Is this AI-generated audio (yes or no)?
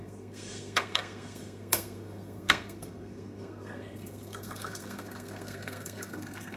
yes